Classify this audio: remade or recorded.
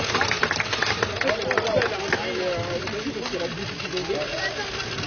recorded